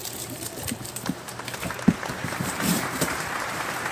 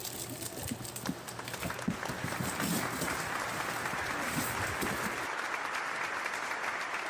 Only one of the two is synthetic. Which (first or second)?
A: first